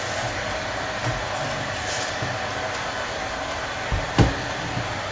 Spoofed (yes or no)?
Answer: no